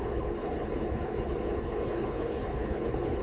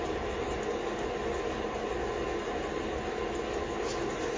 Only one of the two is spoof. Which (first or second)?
first